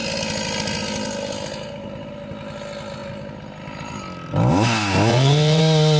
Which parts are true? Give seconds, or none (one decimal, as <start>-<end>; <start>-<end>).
0.0-5.1; 5.6-6.0